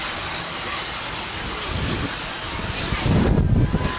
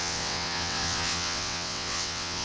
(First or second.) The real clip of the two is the first